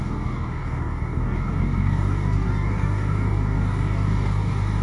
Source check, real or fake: fake